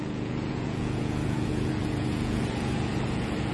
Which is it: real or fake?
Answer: fake